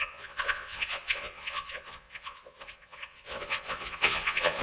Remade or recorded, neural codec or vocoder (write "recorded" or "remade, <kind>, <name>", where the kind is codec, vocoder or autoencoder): remade, vocoder, Vocos